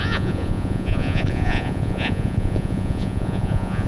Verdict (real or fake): fake